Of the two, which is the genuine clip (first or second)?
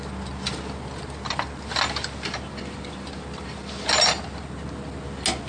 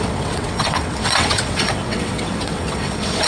first